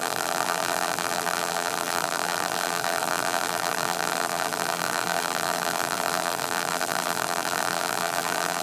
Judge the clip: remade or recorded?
remade